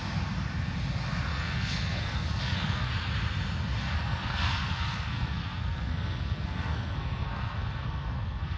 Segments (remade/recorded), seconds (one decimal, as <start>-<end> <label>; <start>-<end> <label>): 0.0-1.3 recorded; 1.3-2.9 remade; 2.9-3.8 recorded; 3.8-8.6 remade